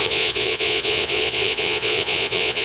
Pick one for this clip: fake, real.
fake